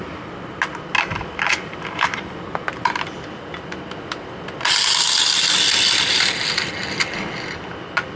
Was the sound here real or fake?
real